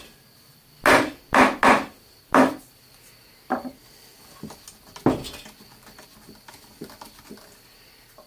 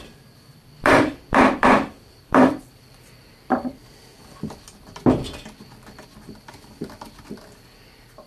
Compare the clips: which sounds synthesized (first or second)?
second